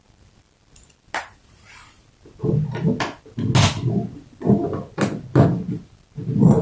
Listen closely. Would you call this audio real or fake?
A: real